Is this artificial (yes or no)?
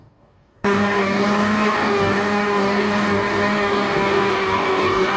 yes